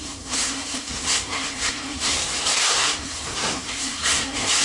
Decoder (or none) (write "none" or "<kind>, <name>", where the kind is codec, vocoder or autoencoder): codec, SNAC